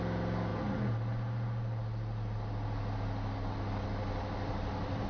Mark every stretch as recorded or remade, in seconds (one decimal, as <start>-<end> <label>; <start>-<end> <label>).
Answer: 0.0-5.1 recorded